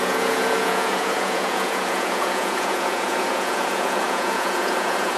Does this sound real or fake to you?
fake